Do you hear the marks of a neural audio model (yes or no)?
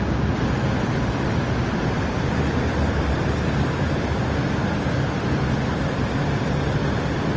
no